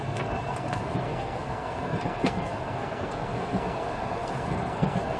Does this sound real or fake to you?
fake